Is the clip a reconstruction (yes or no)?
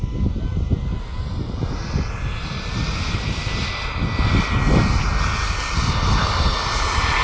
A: no